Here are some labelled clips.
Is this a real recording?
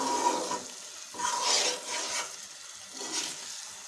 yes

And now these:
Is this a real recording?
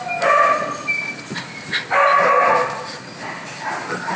yes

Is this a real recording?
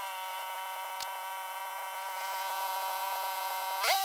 no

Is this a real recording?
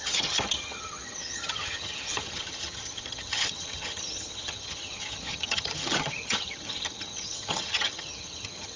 no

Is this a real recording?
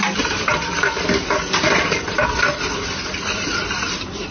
no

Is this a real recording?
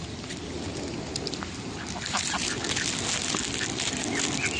yes